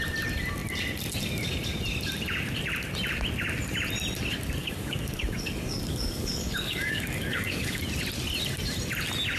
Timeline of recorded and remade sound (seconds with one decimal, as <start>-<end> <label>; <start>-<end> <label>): 0.0-4.6 recorded; 4.6-7.8 remade; 7.8-9.4 recorded